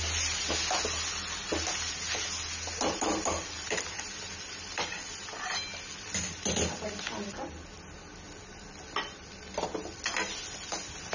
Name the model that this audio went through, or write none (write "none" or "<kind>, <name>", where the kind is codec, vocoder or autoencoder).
none